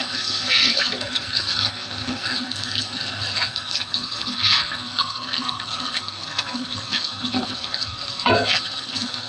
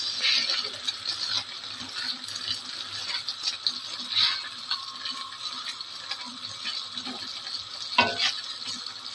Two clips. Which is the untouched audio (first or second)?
second